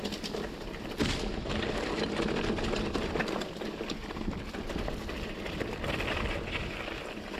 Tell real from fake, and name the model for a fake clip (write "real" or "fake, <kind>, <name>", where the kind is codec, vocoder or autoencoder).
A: real